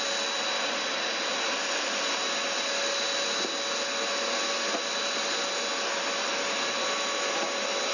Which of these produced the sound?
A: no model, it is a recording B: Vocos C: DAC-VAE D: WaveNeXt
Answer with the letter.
A